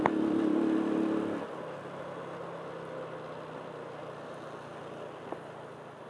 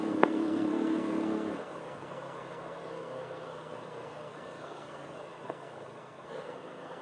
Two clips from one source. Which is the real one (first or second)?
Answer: first